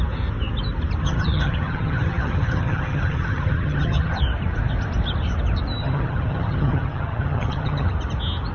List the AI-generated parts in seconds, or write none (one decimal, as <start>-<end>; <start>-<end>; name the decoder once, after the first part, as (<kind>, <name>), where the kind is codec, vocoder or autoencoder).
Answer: 1.0-4.2 (vocoder, HiFi-GAN); 5.8-7.9